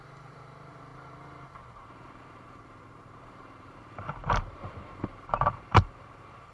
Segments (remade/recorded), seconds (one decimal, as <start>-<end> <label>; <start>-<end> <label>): 0.0-6.5 remade